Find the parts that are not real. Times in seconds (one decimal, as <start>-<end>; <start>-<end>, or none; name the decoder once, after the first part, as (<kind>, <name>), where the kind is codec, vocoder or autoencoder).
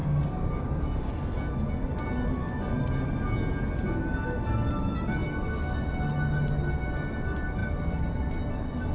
0.0-1.1 (codec, DAC)